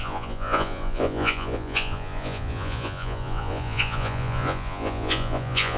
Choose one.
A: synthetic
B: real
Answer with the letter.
A